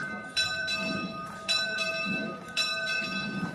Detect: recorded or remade remade